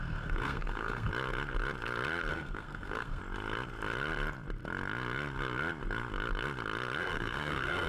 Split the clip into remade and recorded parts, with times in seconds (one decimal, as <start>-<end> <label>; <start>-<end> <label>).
0.0-1.1 remade; 1.1-2.3 recorded; 2.3-3.2 remade; 3.2-7.0 recorded; 7.0-7.9 remade

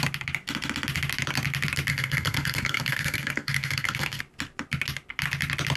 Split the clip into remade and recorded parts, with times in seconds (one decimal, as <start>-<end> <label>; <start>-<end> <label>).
0.0-1.9 recorded; 1.9-4.2 remade; 4.2-5.8 recorded

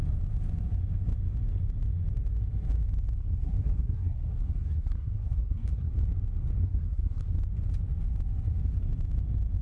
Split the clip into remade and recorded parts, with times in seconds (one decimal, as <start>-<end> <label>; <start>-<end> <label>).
0.0-3.2 recorded; 3.2-5.9 remade; 5.9-6.6 recorded; 6.6-7.3 remade; 7.3-9.6 recorded

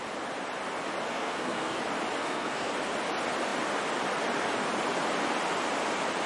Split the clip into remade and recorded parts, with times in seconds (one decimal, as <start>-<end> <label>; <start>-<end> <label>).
0.0-1.1 recorded; 1.1-1.8 remade; 1.8-2.2 recorded; 2.2-2.7 remade; 2.7-6.3 recorded

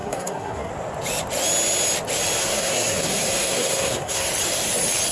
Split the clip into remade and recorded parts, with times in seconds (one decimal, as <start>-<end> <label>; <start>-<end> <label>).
0.0-0.7 remade; 0.7-2.4 recorded; 2.4-4.3 remade; 4.3-5.1 recorded

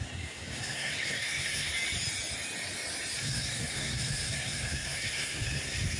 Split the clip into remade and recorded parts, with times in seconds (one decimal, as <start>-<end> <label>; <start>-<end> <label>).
0.0-1.7 remade; 1.7-3.2 recorded; 3.2-6.0 remade